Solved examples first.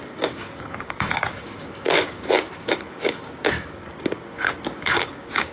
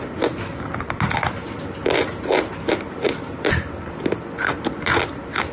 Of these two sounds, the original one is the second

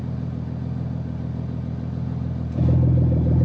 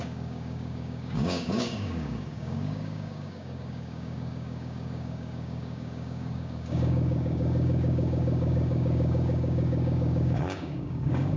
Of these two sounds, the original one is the first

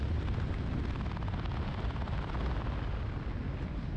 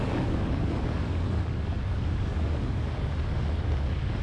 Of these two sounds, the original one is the first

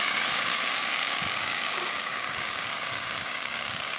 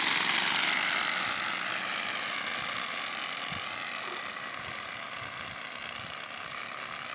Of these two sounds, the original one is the second